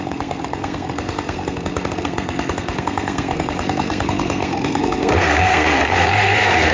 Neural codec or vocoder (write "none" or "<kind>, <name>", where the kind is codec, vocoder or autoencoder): codec, SNAC